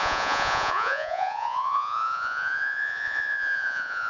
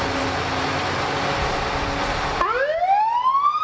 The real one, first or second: second